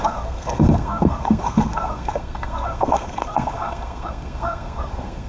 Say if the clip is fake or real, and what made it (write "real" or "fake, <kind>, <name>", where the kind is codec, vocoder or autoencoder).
fake, codec, SNAC